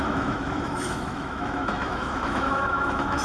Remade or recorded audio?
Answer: remade